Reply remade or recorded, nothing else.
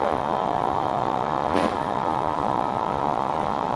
remade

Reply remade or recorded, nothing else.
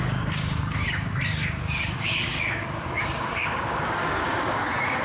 remade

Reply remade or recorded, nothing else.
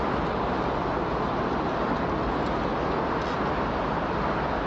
recorded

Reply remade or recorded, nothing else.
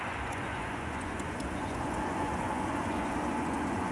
remade